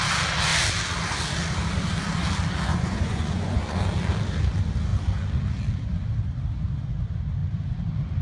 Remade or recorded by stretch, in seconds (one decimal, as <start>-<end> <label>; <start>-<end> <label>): 0.0-2.7 recorded; 2.7-3.8 remade; 3.8-8.2 recorded